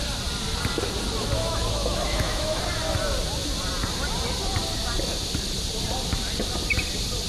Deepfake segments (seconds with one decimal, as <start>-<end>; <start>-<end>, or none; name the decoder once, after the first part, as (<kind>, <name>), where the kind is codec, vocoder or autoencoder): 1.4-2.6 (autoencoder, DAC-VAE)